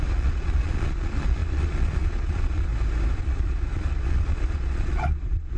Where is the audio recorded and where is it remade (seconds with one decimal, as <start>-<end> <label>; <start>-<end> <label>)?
0.0-2.7 remade; 2.7-3.2 recorded; 3.2-5.6 remade